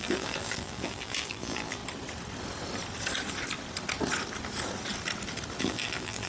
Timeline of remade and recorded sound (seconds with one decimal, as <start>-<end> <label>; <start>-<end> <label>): 0.0-1.8 remade; 1.8-5.6 recorded; 5.6-6.3 remade